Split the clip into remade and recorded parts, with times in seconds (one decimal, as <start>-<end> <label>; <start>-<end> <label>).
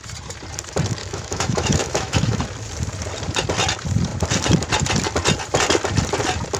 0.0-1.0 recorded; 1.0-2.4 remade; 2.4-6.6 recorded